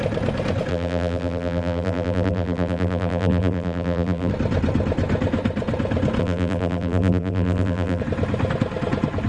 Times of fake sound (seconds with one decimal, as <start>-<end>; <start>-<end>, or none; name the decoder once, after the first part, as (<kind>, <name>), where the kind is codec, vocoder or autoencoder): 0.7-4.3 (vocoder, BigVGAN v2); 6.2-8.0